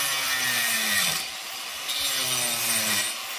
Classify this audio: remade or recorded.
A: recorded